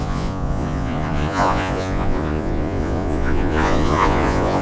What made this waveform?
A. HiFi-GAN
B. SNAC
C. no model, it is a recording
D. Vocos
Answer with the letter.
D